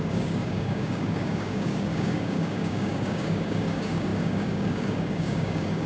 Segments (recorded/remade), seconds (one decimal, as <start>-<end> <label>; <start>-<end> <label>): 0.0-5.9 remade